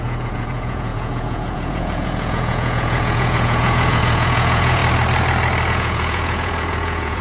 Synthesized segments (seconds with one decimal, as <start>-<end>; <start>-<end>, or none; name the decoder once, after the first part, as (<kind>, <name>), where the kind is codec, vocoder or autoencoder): 0.0-4.8 (vocoder, Vocos); 5.7-7.2